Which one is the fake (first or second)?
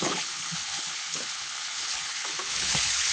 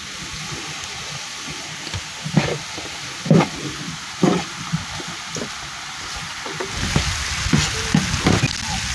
first